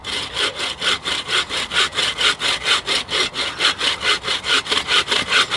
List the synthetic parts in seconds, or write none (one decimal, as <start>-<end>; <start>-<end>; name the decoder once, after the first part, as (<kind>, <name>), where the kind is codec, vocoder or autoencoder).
none